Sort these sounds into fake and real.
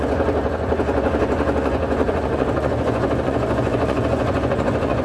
fake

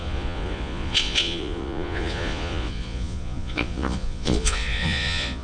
fake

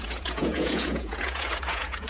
fake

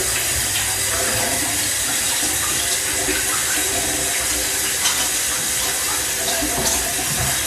real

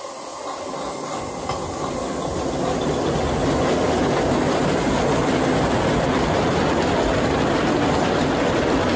real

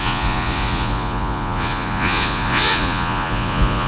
fake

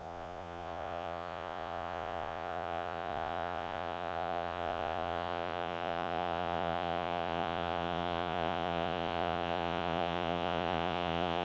fake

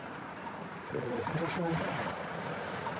fake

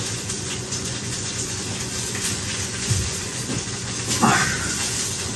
fake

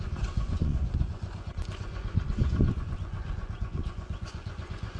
fake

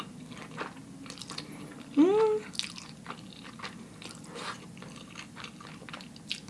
real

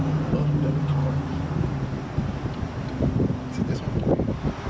real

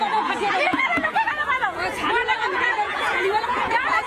fake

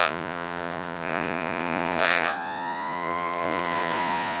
fake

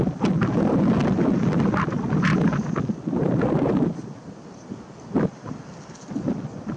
real